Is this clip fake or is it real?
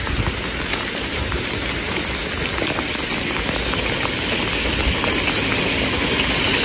real